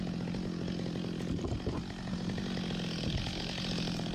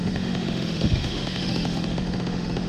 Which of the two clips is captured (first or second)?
first